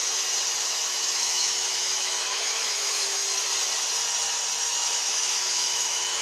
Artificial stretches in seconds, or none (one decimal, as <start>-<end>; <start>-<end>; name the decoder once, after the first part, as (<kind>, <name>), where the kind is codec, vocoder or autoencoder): 0.6-3.2 (autoencoder, DAC-VAE); 4.6-6.2